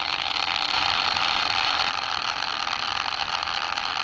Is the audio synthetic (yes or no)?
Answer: no